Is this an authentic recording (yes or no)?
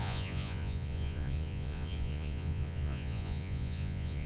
no